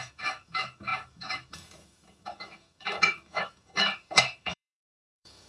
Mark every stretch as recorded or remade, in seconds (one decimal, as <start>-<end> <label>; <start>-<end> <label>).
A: 0.0-5.5 remade